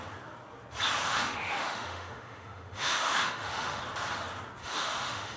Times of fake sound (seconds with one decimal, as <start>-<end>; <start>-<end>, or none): 1.0-3.8; 4.6-5.4